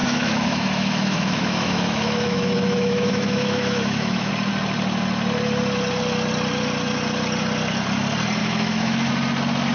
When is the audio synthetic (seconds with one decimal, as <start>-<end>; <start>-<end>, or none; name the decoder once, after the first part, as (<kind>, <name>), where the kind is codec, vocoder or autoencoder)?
0.0-4.3 (autoencoder, DAC-VAE); 8.4-9.1